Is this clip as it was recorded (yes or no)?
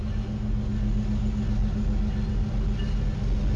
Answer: yes